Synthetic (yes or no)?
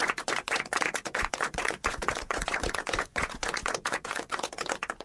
yes